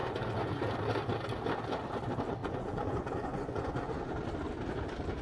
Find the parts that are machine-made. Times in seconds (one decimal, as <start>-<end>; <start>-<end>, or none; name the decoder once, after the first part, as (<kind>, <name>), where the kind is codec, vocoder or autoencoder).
0.0-0.7 (vocoder, Vocos); 2.4-4.0